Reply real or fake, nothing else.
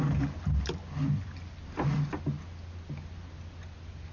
real